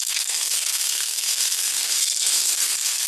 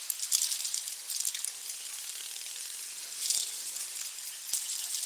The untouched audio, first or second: second